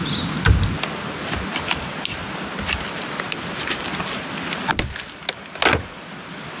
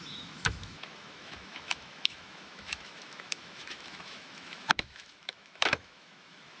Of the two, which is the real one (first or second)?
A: first